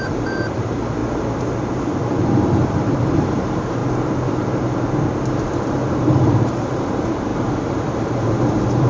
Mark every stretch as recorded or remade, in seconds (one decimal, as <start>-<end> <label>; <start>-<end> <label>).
0.0-1.0 remade; 1.0-2.1 recorded; 2.1-3.8 remade; 3.8-5.3 recorded; 5.3-8.9 remade